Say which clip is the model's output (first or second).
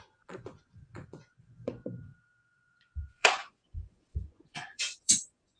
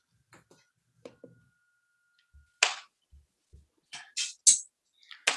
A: first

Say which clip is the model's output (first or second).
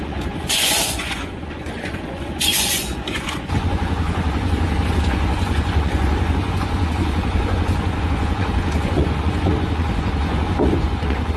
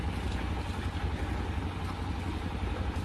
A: first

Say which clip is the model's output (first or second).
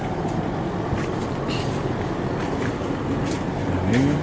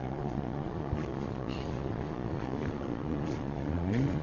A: second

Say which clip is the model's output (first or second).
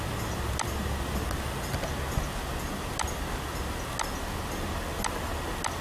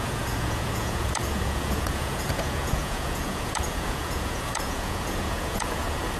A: second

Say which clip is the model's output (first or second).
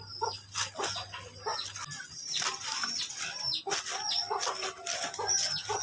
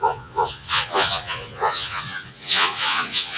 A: second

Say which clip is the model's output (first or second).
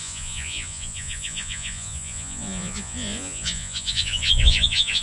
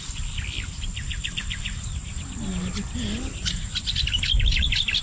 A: first